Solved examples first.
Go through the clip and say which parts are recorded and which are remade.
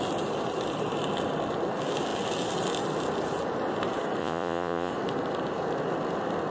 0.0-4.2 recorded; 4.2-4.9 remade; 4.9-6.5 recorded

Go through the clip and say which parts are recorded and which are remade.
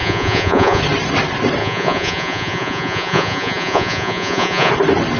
0.0-0.8 remade; 0.8-1.6 recorded; 1.6-4.7 remade; 4.7-5.2 recorded